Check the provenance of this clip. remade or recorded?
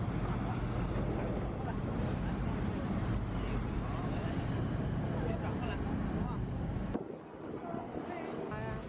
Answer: recorded